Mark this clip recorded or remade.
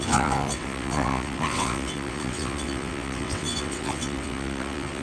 remade